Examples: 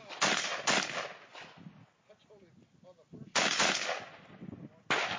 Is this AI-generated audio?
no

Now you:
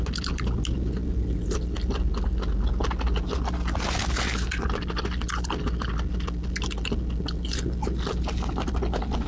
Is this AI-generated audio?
no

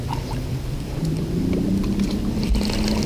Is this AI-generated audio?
no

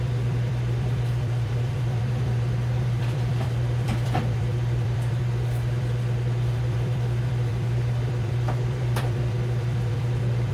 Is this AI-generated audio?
yes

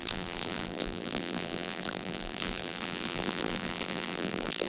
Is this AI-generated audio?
yes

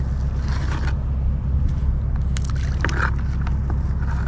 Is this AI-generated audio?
no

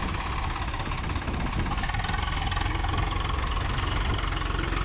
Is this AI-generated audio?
no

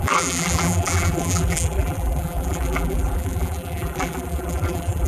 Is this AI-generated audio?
yes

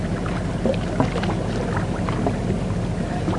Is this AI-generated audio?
no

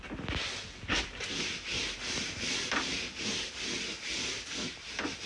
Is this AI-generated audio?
no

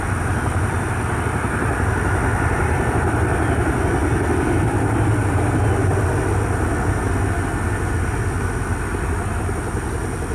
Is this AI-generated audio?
no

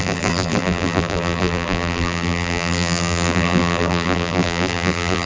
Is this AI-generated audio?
yes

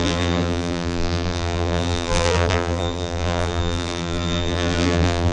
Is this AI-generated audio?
yes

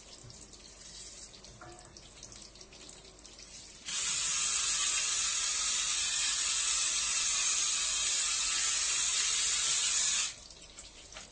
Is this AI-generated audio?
no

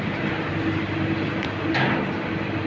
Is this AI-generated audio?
yes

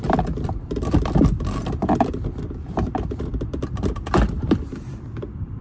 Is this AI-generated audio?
yes